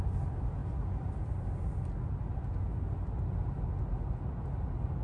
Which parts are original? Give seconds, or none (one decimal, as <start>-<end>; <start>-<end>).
0.0-5.0